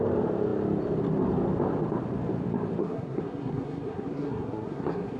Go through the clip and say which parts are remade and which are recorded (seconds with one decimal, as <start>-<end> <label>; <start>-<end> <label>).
0.0-2.8 recorded; 2.8-5.2 remade